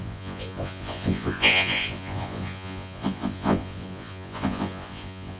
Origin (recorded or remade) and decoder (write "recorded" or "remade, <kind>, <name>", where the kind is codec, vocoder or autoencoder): remade, vocoder, Vocos